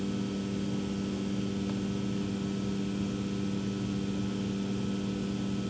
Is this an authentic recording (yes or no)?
yes